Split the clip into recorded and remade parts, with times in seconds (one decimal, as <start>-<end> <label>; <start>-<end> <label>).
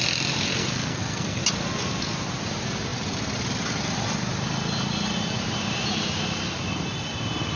0.0-0.6 recorded; 0.6-1.4 remade; 1.4-7.6 recorded